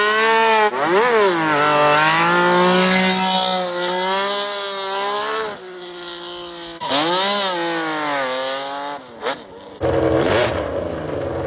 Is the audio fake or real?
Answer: real